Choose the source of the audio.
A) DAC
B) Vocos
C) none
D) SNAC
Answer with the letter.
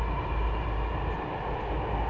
C